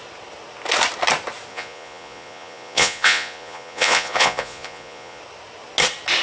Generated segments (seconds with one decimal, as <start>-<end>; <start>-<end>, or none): 1.5-5.2